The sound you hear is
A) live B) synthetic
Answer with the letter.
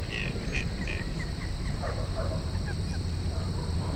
B